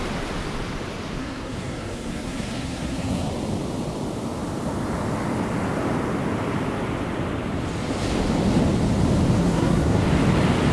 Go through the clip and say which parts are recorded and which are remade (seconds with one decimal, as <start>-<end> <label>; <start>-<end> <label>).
0.0-1.2 recorded; 1.2-3.3 remade; 3.3-9.4 recorded; 9.4-10.0 remade; 10.0-10.7 recorded